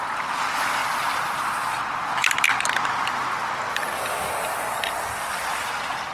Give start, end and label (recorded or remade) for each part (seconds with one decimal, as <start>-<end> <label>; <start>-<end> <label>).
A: 0.0-6.1 recorded